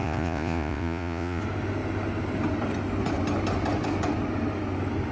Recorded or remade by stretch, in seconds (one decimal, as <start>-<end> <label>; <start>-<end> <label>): 0.0-1.4 remade; 1.4-5.1 recorded